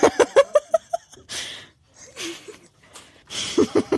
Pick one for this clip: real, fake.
real